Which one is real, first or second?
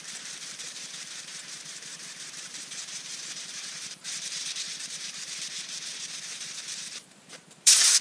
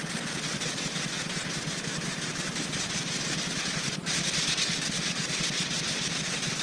second